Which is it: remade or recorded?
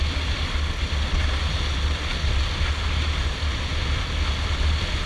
recorded